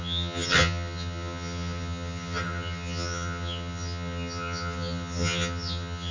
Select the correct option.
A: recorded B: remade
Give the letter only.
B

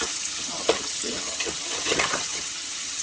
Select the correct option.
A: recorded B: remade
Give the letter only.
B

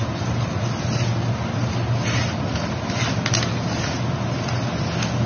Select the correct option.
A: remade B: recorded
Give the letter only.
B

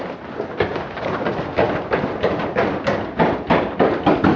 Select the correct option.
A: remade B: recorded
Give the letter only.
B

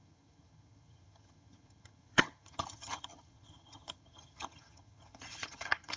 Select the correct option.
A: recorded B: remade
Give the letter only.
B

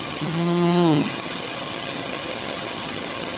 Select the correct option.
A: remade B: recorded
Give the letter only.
A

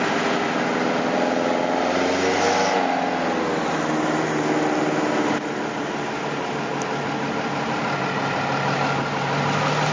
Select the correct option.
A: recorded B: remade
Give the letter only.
A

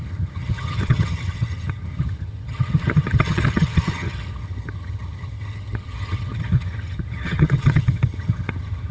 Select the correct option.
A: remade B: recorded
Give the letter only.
A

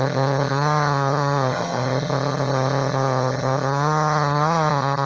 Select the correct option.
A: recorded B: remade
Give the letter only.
B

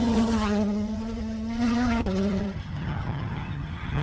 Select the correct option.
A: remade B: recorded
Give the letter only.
A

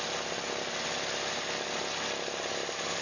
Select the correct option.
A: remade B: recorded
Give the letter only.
B